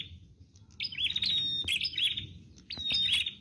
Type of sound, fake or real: real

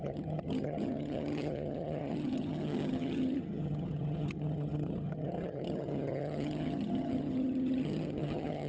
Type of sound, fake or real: fake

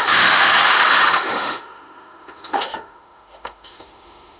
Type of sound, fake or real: fake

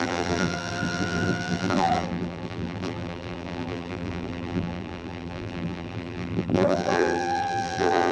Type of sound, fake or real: fake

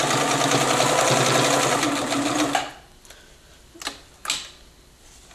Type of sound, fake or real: real